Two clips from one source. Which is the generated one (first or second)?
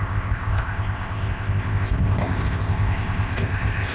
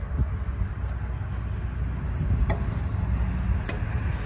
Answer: first